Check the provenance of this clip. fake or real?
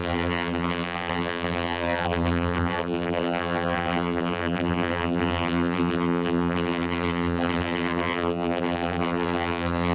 fake